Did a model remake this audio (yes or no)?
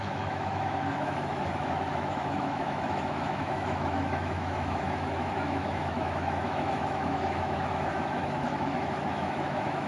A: yes